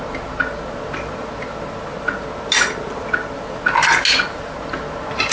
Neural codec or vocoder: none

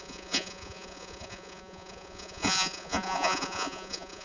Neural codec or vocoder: vocoder, Vocos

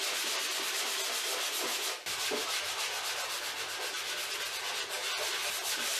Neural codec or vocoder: none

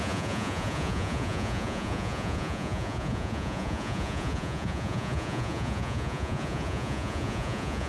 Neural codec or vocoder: vocoder, Vocos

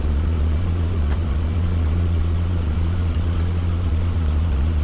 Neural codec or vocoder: vocoder, Vocos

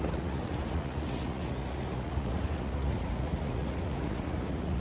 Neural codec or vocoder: vocoder, Vocos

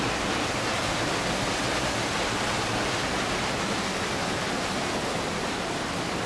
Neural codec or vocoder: none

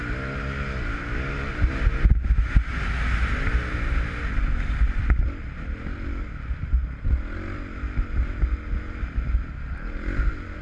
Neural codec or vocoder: none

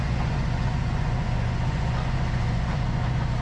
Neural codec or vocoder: vocoder, Vocos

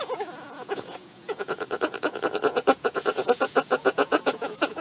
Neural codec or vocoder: vocoder, Vocos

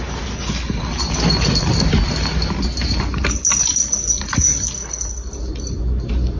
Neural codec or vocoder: none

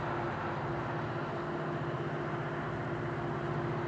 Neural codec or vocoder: none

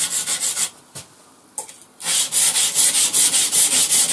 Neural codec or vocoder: none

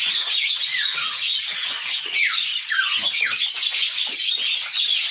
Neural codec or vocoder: vocoder, Vocos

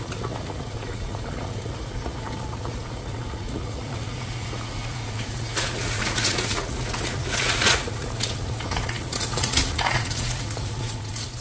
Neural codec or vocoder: vocoder, Vocos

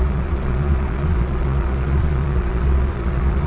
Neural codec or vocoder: vocoder, Vocos